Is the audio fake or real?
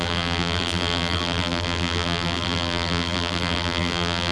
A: fake